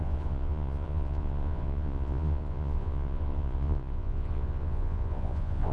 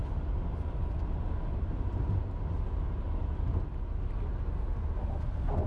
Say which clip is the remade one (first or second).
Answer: first